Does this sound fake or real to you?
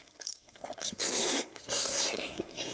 fake